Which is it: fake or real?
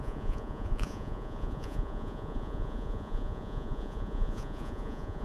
fake